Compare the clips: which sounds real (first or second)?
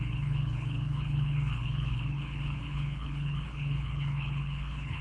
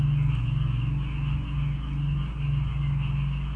second